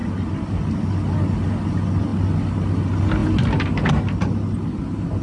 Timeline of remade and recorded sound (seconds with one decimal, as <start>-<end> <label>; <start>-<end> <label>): 0.0-5.2 recorded